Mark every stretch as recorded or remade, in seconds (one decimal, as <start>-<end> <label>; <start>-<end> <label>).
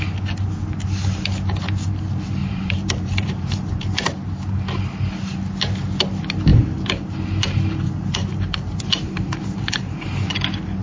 0.0-2.4 recorded; 2.4-3.8 remade; 3.8-6.5 recorded; 6.5-10.3 remade; 10.3-10.8 recorded